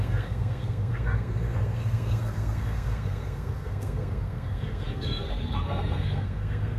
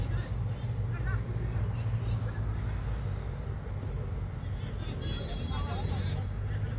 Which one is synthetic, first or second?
first